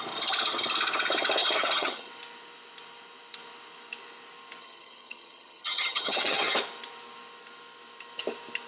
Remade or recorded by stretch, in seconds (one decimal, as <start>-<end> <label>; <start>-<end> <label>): 0.0-1.4 recorded; 1.4-2.1 remade; 2.1-4.6 recorded; 4.6-6.5 remade; 6.5-8.7 recorded